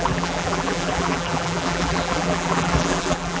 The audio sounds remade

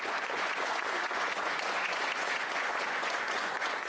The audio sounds remade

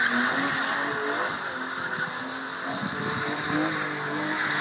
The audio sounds recorded